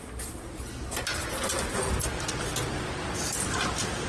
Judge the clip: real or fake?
real